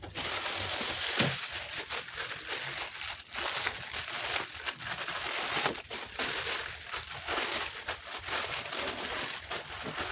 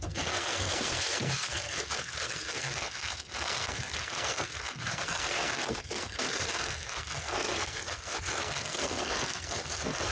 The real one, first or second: first